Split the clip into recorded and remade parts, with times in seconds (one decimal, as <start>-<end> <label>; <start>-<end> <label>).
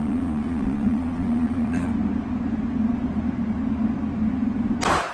0.0-1.9 remade; 1.9-5.1 recorded